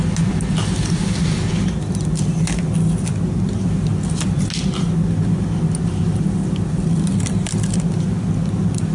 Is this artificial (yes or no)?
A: no